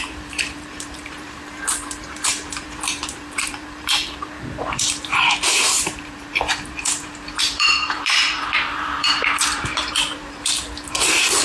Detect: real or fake fake